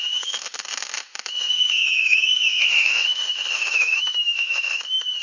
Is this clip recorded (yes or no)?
no